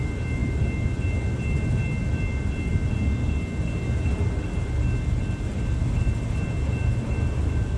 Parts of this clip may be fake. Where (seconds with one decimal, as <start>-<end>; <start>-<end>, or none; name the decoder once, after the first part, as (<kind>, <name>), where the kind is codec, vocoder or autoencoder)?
none